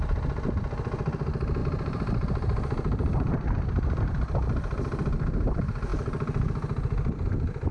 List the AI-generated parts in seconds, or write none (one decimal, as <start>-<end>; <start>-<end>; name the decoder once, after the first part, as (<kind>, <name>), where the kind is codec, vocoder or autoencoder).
1.6-4.0 (vocoder, BigVGAN v2)